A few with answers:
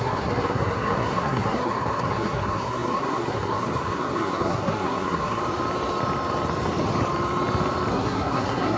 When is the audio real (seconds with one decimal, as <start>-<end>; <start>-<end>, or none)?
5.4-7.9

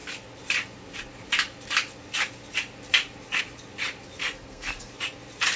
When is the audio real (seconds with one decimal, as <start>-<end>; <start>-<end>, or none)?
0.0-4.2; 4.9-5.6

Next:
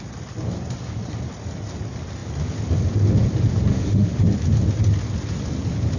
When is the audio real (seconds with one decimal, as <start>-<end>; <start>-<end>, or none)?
0.0-3.7; 4.2-6.0